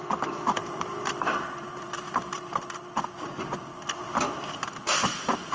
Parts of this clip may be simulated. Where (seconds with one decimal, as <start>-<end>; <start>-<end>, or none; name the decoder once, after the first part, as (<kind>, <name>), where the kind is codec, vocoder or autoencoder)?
0.6-2.6 (vocoder, BigVGAN v2)